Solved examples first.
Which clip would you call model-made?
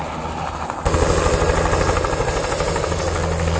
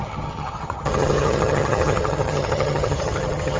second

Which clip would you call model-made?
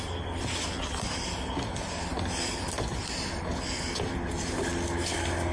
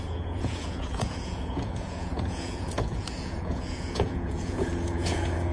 second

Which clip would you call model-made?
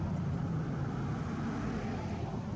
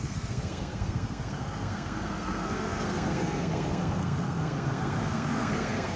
second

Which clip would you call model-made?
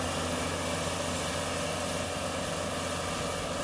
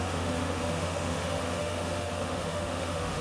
second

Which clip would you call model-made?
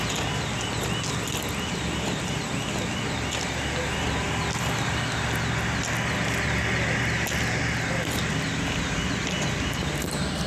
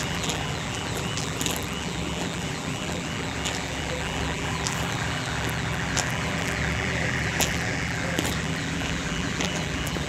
second